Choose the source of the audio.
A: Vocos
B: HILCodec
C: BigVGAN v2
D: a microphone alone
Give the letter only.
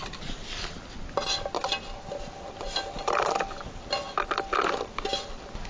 D